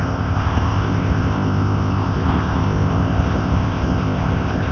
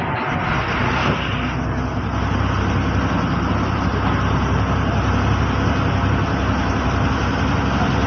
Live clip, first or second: second